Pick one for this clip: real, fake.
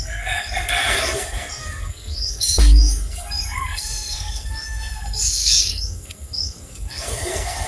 fake